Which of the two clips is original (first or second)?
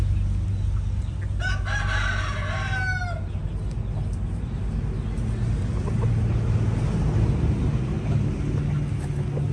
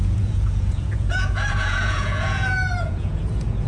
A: first